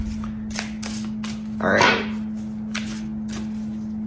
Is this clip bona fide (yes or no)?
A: yes